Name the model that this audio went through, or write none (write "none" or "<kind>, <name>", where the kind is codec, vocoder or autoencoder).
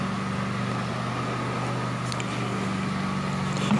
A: none